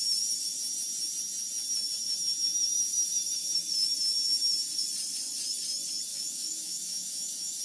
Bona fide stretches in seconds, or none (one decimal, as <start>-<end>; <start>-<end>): 0.0-6.1